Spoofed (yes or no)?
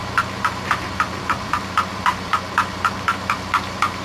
yes